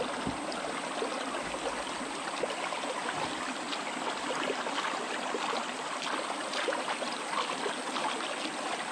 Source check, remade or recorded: recorded